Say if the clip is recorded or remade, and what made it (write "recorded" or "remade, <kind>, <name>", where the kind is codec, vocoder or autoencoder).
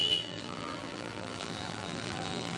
remade, vocoder, BigVGAN v2